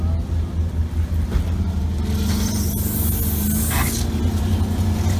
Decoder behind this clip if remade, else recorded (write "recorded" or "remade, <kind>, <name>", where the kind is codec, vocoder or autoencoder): recorded